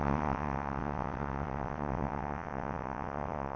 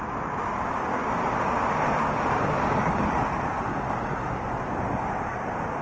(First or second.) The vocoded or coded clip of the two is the first